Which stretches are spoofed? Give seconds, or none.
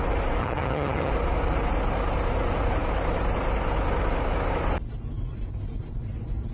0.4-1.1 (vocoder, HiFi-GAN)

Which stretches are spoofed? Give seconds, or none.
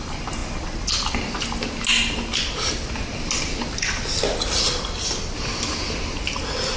none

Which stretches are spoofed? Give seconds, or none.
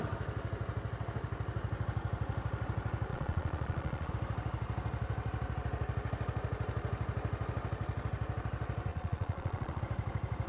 3.1-4.1 (vocoder, Vocos); 8.9-9.8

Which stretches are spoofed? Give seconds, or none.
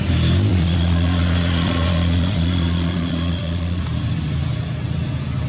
0.5-3.8 (vocoder, Vocos)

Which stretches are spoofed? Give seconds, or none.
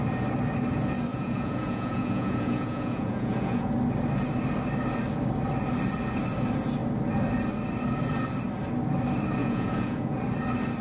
1.1-3.7 (vocoder, Vocos); 9.4-10.2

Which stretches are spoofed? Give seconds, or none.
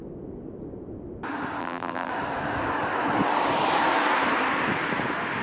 1.6-2.1 (vocoder, BigVGAN v2)